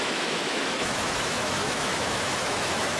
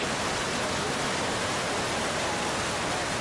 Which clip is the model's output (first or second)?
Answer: first